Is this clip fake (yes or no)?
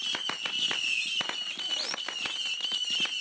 no